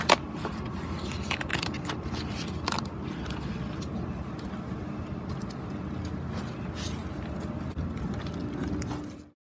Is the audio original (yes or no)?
yes